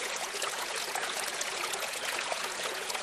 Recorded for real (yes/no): no